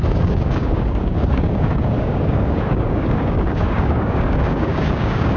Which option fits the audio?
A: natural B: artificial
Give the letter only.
B